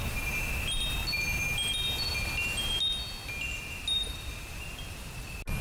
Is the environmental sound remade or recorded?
recorded